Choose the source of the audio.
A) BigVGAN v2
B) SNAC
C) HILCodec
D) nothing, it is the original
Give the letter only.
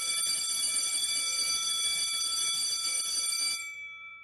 A